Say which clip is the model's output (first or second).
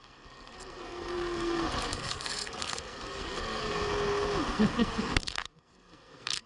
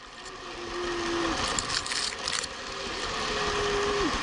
first